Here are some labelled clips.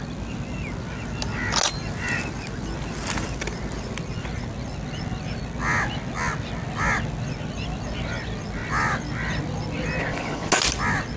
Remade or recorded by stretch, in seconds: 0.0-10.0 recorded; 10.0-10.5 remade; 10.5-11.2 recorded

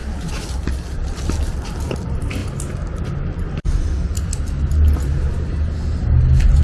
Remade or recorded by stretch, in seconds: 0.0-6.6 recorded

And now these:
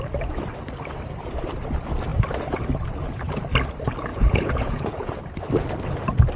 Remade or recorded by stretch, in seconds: 0.0-4.1 recorded; 4.1-5.2 remade; 5.2-6.4 recorded